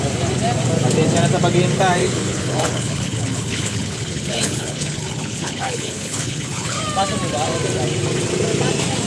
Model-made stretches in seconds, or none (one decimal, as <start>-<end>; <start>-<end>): 2.0-6.8